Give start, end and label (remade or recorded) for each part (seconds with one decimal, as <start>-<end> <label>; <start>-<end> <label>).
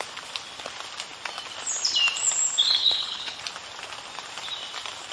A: 0.0-2.8 recorded; 2.8-3.4 remade; 3.4-5.1 recorded